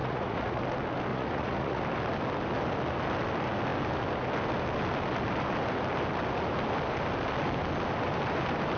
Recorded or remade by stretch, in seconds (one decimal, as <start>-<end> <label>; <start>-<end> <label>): 0.0-0.6 remade; 0.6-1.1 recorded; 1.1-1.8 remade; 1.8-8.8 recorded